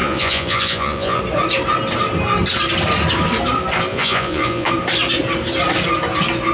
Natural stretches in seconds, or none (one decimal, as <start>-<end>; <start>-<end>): 1.2-3.9; 4.7-6.5